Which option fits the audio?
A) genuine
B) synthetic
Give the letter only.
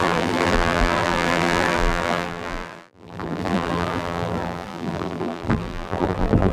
B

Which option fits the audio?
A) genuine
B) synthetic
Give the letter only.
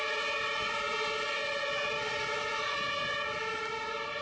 A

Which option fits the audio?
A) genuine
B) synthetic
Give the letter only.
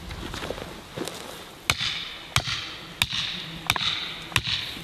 A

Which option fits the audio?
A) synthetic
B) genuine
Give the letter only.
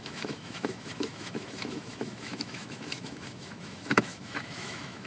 A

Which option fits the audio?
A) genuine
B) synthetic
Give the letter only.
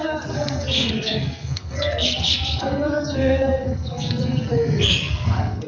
B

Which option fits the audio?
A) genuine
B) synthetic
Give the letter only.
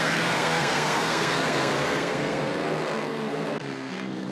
B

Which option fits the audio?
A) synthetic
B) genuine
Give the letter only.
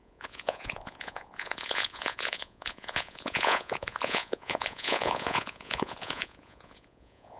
A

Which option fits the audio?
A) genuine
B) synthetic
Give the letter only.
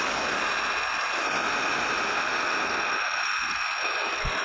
A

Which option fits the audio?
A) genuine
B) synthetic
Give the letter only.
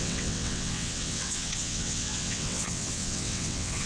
B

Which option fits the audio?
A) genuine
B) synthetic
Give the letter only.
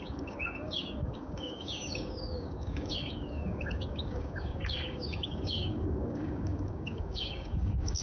B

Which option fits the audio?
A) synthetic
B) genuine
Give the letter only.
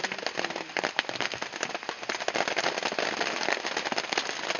B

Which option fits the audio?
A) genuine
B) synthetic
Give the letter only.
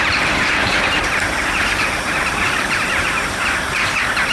B